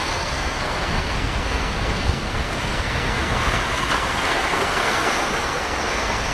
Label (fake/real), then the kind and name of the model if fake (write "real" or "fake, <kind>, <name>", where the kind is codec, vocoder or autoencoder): fake, codec, SNAC